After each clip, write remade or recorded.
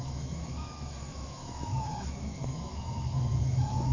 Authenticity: remade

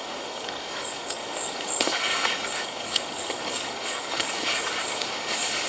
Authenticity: remade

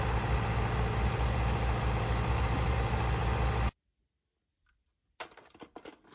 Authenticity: recorded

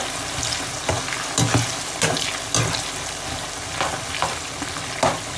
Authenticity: recorded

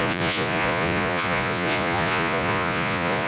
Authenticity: remade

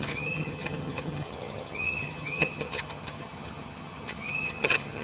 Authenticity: remade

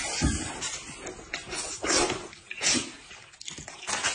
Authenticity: recorded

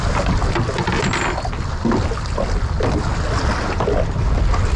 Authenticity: recorded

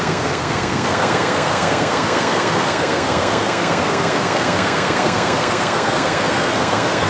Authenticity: remade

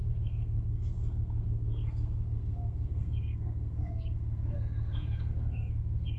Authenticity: remade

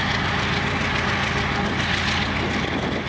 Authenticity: recorded